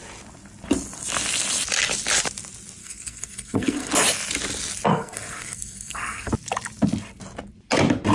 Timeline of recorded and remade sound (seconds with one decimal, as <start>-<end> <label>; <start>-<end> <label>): 0.0-2.8 recorded; 2.8-3.9 remade; 3.9-4.9 recorded; 4.9-6.3 remade; 6.3-8.1 recorded

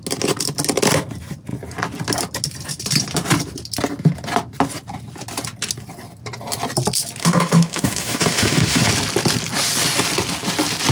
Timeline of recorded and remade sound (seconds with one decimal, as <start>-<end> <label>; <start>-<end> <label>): 0.0-7.2 recorded; 7.2-8.9 remade; 8.9-10.9 recorded

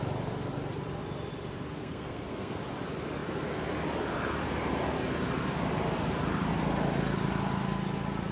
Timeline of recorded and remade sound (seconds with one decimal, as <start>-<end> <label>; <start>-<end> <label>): 0.0-1.8 recorded; 1.8-2.6 remade; 2.6-8.3 recorded

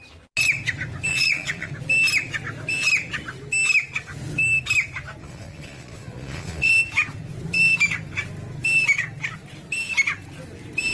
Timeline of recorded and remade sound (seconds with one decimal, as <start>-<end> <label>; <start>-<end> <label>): 0.0-1.1 recorded; 1.1-1.7 remade; 1.7-5.2 recorded; 5.2-6.7 remade; 6.7-10.9 recorded

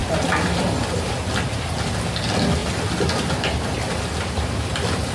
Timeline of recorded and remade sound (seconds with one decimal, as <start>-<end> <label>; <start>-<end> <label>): 0.0-5.1 recorded

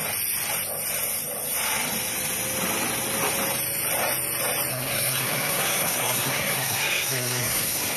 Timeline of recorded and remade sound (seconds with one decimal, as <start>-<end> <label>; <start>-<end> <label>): 0.0-4.7 recorded; 4.7-8.0 remade

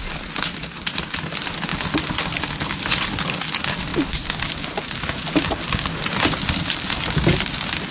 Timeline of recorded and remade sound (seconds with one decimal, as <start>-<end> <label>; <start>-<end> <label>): 0.0-7.9 recorded

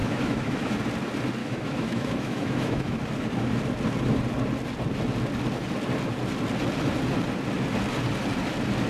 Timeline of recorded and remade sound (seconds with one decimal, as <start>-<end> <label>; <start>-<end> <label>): 0.0-0.8 remade; 0.8-1.4 recorded; 1.4-3.0 remade; 3.0-8.9 recorded